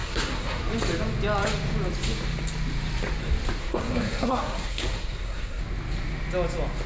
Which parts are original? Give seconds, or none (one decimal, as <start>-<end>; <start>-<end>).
0.6-3.6; 5.6-6.9